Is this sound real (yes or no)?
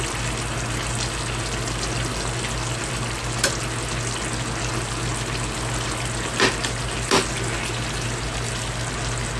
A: yes